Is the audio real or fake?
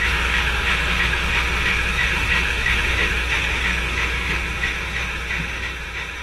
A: fake